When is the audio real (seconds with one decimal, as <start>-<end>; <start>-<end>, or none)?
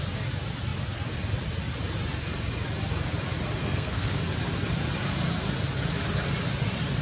0.0-3.6; 4.2-7.0